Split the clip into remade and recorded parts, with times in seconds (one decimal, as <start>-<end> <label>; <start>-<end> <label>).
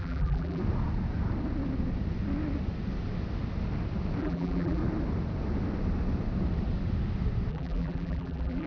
0.0-0.6 remade; 0.6-4.2 recorded; 4.2-4.8 remade; 4.8-7.5 recorded; 7.5-8.7 remade